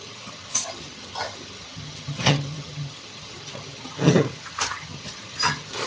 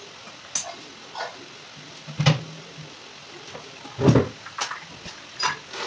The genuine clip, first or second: second